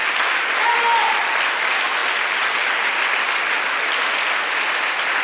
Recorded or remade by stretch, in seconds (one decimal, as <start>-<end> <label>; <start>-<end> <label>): 0.0-5.2 recorded